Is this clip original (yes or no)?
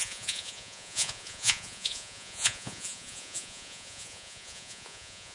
no